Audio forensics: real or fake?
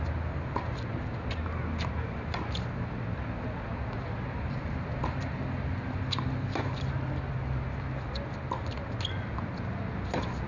real